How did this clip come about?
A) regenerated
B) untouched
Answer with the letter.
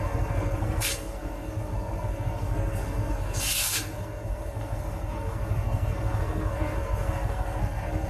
A